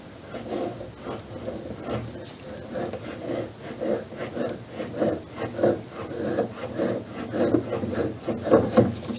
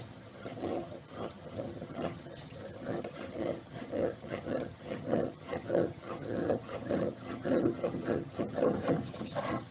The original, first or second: first